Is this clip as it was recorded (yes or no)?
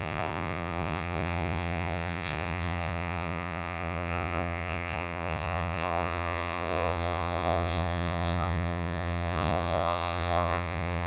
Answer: no